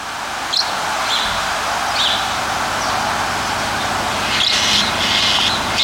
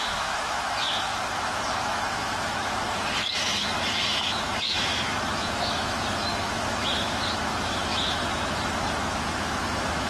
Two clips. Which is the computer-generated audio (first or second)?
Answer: second